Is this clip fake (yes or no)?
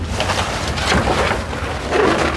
no